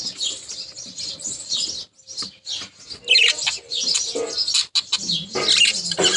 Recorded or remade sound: recorded